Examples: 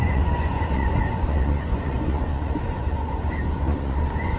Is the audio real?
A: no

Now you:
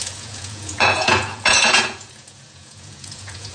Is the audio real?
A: no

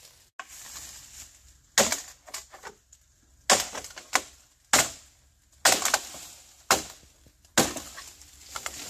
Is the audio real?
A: yes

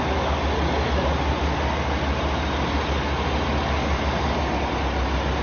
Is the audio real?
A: yes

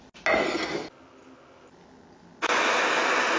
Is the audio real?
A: yes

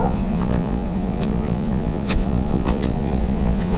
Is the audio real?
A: no